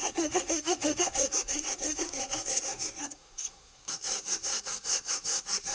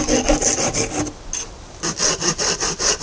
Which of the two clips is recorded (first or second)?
second